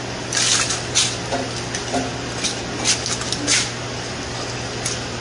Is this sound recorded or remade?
recorded